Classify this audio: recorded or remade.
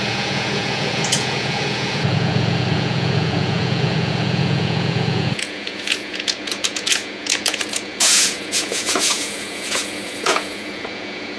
remade